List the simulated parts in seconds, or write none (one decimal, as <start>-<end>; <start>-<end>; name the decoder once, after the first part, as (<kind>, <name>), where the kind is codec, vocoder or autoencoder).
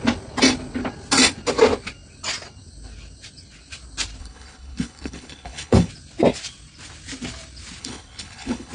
4.2-5.9 (codec, HILCodec); 7.8-8.7